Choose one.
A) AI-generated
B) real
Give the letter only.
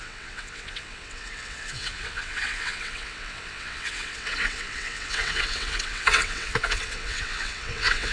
A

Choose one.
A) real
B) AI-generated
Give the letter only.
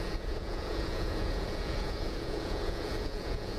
B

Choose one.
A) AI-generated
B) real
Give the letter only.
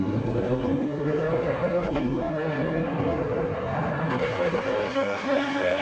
A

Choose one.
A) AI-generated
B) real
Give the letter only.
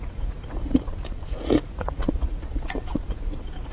A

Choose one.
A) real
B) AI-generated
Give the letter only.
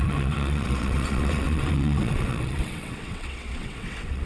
B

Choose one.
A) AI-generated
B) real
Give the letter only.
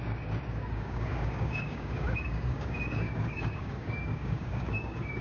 A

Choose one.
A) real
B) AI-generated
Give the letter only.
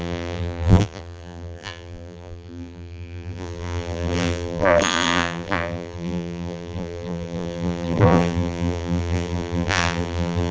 B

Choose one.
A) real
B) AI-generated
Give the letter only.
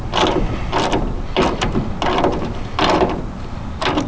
A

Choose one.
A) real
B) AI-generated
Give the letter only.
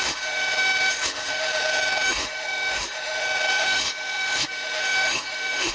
B